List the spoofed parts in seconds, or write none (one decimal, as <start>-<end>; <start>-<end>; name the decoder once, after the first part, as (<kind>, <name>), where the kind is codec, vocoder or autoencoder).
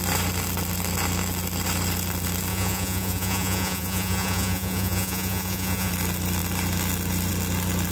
2.5-5.9 (vocoder, Vocos)